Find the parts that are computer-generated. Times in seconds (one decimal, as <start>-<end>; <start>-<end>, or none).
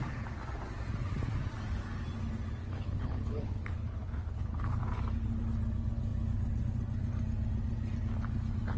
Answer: 2.6-4.8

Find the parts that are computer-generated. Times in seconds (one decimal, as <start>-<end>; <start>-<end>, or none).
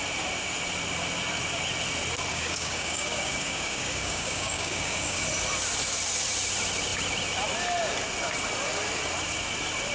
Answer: 2.3-5.2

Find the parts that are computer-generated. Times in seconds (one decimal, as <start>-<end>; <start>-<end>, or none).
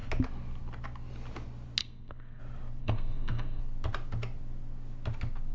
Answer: 1.8-2.4; 2.8-3.6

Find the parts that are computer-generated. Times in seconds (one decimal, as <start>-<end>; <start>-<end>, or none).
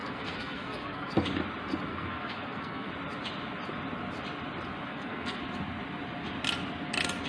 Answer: 0.0-1.1; 1.9-2.9; 4.9-5.4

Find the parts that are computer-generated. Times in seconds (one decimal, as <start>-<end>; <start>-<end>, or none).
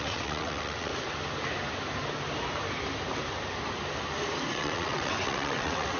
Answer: 0.0-0.9; 4.5-6.0